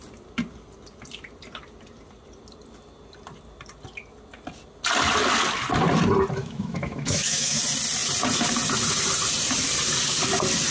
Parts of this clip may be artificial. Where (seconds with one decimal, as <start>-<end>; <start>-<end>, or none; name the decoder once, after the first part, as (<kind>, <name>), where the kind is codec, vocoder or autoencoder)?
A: 6.4-7.6 (autoencoder, DAC-VAE)